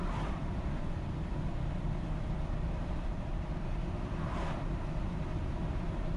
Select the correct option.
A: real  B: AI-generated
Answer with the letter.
B